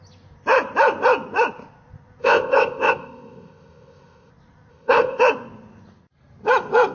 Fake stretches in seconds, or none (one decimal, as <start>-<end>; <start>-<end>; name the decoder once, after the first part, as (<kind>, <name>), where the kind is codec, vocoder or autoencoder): 2.2-4.3 (codec, ZipCodec); 4.7-5.2

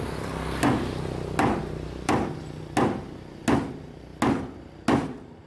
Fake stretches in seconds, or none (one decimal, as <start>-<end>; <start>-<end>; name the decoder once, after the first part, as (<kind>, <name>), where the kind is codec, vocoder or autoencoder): none

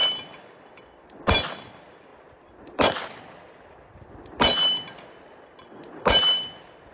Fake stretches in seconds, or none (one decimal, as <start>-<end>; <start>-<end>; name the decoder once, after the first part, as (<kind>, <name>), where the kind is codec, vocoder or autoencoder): none

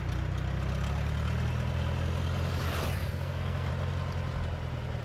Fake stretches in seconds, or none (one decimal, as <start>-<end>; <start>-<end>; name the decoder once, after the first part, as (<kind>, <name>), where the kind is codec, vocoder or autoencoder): 3.0-3.7 (codec, SNAC)

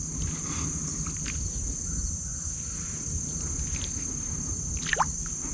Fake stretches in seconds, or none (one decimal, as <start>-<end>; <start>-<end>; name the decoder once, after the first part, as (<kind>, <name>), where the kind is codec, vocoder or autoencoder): none

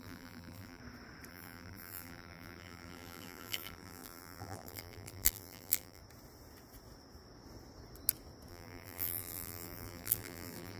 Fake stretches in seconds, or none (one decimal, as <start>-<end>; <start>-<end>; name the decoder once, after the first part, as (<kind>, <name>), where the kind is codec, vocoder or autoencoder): 0.0-0.8 (vocoder, BigVGAN v2); 1.3-6.0; 8.5-10.8